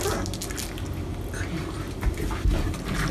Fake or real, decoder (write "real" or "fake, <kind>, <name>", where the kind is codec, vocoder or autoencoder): real